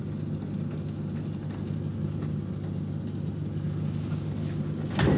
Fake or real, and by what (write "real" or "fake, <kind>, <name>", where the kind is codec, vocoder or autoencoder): real